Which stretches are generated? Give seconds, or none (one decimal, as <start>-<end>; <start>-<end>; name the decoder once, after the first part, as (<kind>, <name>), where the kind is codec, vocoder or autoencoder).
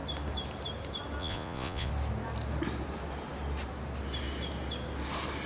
1.2-1.9 (vocoder, Vocos)